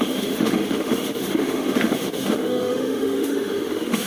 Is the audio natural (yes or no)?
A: no